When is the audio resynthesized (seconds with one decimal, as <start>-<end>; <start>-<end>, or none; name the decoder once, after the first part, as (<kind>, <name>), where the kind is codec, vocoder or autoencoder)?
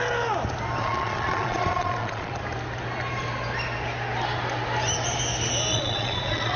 0.8-2.3 (vocoder, Vocos); 5.7-6.6